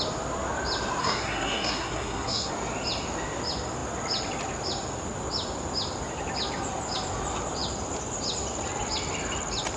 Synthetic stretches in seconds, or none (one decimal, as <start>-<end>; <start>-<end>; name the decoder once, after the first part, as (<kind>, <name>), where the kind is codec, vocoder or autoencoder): 1.0-2.5 (codec, SNAC)